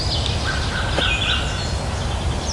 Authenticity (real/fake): real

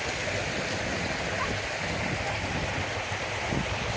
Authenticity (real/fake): real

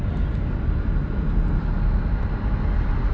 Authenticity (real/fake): real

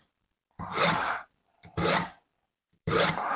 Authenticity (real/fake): fake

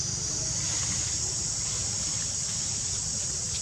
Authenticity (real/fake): fake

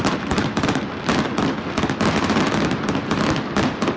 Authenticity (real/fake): real